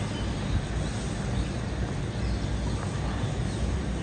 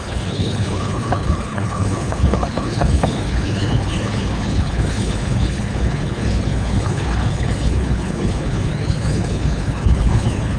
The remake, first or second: second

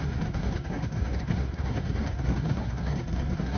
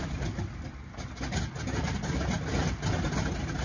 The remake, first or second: first